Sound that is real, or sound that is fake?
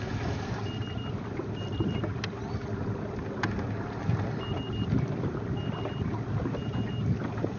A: real